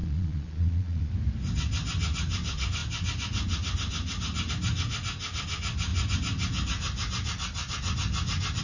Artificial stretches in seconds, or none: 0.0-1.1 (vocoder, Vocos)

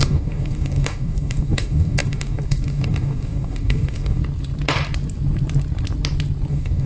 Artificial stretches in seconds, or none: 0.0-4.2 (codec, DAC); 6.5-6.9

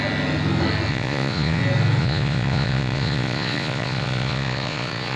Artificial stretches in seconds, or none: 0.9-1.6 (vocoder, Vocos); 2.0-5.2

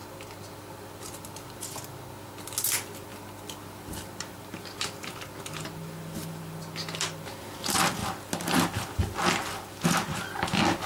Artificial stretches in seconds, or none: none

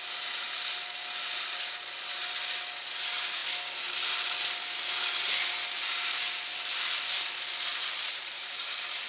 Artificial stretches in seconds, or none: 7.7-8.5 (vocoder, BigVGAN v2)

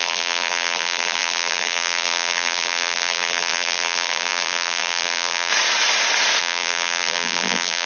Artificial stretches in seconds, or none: 0.0-5.5 (vocoder, BigVGAN v2); 6.4-7.9

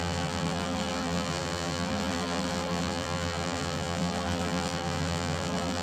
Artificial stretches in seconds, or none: 0.0-5.8 (vocoder, BigVGAN v2)

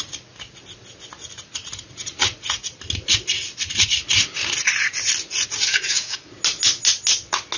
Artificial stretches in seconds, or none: 5.7-6.3 (codec, DAC)